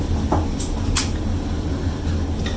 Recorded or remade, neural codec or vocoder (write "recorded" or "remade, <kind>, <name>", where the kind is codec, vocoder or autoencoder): recorded